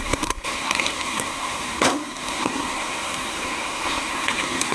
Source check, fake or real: fake